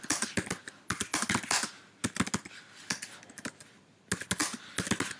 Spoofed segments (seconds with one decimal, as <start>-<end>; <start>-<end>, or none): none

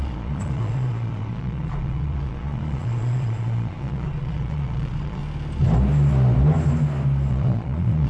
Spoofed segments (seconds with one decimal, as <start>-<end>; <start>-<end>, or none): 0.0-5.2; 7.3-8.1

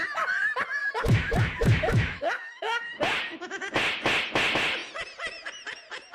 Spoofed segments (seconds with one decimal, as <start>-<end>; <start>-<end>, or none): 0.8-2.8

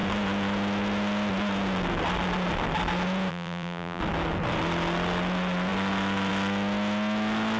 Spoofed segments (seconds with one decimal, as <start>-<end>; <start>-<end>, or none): 3.3-4.0

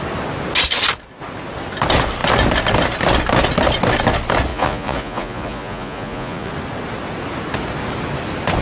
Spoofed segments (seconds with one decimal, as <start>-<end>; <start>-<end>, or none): 4.5-6.5

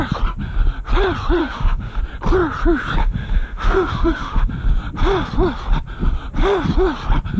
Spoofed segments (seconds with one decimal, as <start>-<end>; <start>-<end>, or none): 1.4-2.0; 3.0-4.5

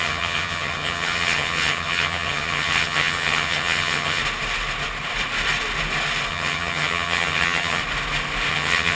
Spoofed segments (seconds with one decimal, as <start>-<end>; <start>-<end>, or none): 0.0-4.2; 6.3-7.8; 8.5-8.9

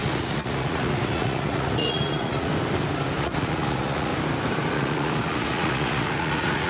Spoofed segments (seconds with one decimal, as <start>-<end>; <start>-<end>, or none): 0.0-2.5; 3.2-4.1; 4.7-6.7